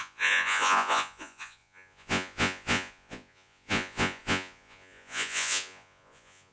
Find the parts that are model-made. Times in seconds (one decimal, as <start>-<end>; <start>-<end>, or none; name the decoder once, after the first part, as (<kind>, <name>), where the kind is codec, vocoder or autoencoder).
0.0-6.5 (vocoder, Vocos)